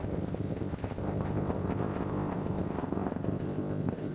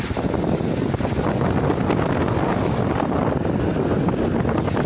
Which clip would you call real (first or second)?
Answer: second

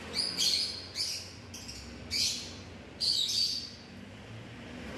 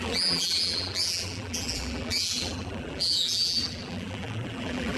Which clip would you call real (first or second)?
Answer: first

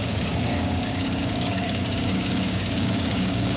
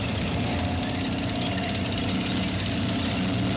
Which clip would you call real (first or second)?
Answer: second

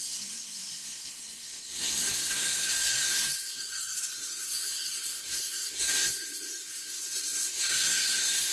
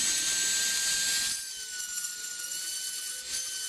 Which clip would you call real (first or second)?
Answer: second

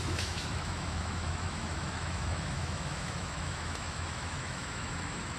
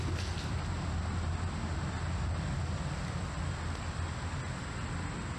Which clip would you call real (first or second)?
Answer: second